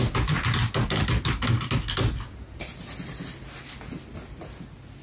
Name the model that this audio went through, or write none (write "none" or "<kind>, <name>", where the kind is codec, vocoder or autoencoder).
none